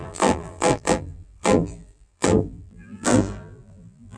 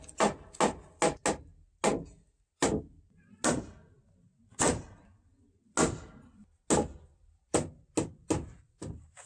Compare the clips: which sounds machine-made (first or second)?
first